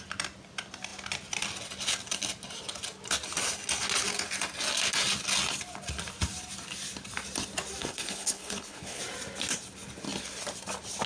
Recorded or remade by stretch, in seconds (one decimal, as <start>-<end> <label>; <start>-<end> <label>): 0.0-7.8 recorded; 7.8-9.0 remade; 9.0-11.1 recorded